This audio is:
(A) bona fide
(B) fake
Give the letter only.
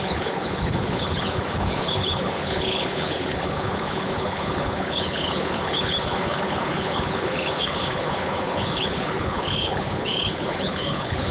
B